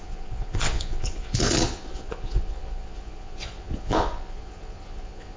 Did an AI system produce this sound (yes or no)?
yes